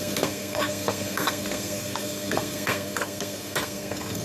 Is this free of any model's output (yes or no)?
no